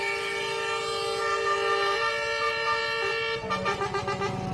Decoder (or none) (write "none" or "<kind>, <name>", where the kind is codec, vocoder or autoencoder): none